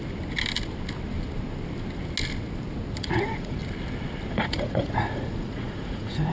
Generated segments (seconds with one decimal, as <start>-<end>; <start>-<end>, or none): 3.0-3.6; 4.3-6.3